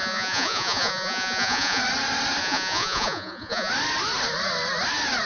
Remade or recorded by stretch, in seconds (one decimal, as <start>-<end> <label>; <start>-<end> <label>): 0.0-1.8 remade; 1.8-2.4 recorded; 2.4-3.7 remade; 3.7-5.3 recorded